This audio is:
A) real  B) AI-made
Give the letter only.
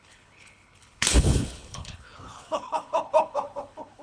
B